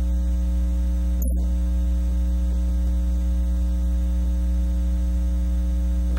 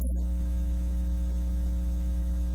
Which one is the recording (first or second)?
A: first